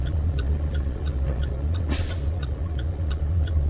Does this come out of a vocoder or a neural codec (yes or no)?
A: yes